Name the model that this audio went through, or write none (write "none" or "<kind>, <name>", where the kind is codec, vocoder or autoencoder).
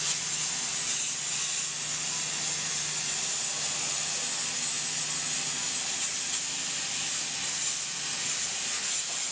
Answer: none